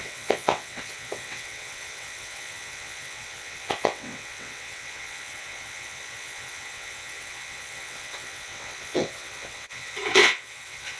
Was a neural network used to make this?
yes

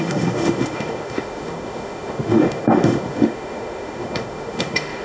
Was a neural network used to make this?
yes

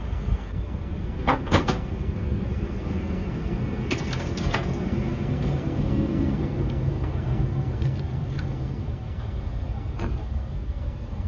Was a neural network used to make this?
yes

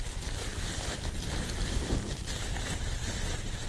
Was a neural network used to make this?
no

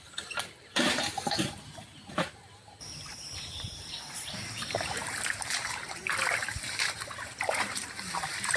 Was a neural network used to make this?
yes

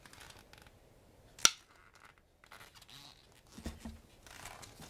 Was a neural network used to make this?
no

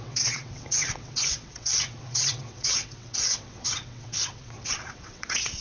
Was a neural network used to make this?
yes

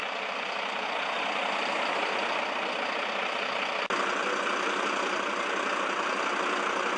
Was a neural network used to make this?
no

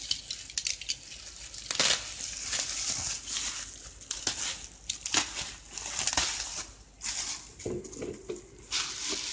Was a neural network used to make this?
no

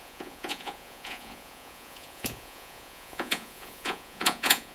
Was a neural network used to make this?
yes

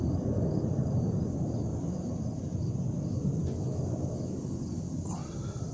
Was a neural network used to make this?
no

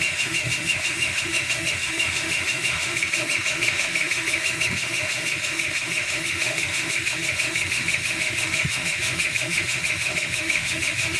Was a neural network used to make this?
yes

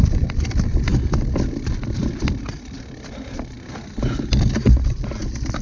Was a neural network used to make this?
no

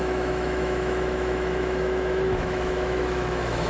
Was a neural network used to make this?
yes